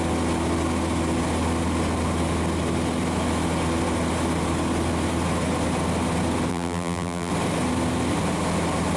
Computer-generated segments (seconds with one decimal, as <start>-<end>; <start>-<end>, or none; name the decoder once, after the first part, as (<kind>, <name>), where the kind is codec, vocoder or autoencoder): 6.5-7.3 (vocoder, BigVGAN v2)